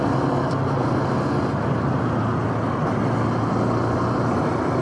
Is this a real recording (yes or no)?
yes